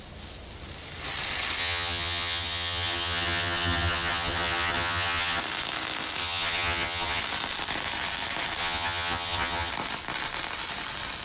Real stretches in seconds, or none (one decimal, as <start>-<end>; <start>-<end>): 0.0-1.6; 5.4-6.2; 7.2-8.6; 9.7-11.2